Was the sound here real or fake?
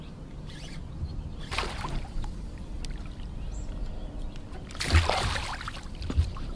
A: fake